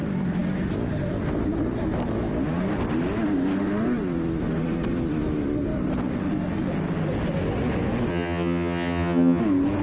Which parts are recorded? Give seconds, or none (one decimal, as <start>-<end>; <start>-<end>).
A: 0.0-8.1; 9.4-9.8